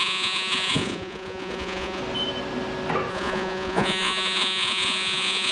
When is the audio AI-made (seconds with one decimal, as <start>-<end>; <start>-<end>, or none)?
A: 0.0-2.0; 3.1-5.5

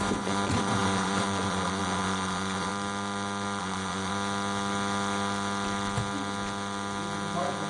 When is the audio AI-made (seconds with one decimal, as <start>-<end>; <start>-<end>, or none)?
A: 0.0-2.7; 3.6-4.1